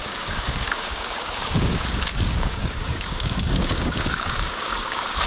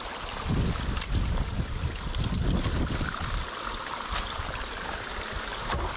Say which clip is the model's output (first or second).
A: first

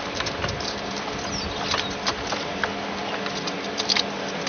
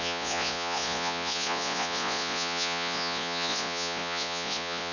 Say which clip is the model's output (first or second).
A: second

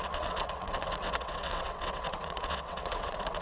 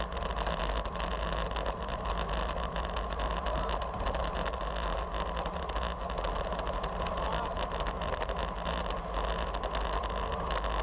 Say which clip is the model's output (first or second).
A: first